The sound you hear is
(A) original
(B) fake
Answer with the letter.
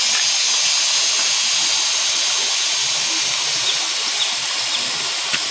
A